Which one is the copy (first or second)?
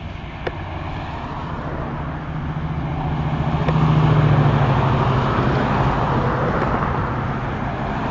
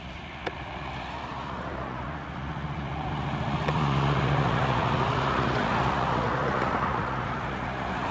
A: second